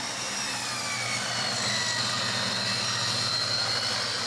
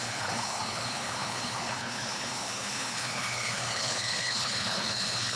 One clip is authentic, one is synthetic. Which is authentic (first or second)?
first